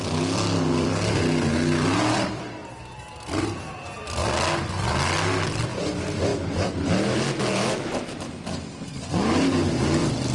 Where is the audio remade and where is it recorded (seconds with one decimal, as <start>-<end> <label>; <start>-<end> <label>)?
0.0-2.6 remade; 2.6-3.3 recorded; 3.3-4.2 remade; 4.2-4.7 recorded; 4.7-6.3 remade; 6.3-9.5 recorded; 9.5-10.3 remade